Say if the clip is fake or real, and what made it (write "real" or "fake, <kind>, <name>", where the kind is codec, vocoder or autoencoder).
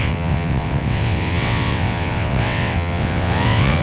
fake, vocoder, WaveNeXt